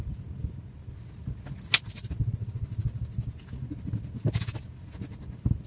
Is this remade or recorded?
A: recorded